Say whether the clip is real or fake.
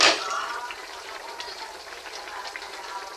real